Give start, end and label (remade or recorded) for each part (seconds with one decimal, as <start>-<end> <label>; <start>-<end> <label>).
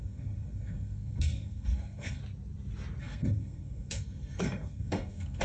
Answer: 0.0-2.2 remade; 2.2-3.0 recorded; 3.0-5.4 remade